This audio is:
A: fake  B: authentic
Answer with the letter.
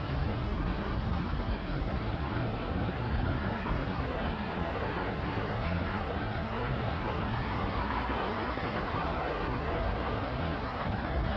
A